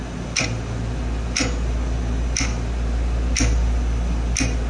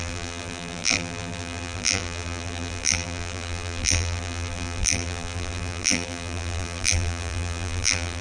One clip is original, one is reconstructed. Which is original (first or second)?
first